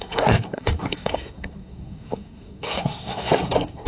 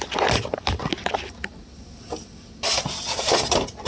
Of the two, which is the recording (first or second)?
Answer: second